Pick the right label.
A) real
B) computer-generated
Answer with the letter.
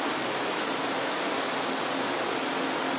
A